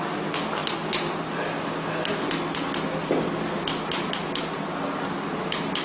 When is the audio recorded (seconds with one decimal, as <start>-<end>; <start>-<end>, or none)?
0.0-5.8